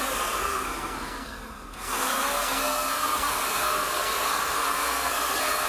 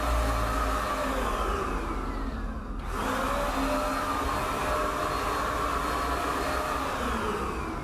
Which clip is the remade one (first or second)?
first